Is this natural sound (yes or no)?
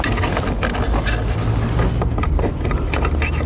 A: yes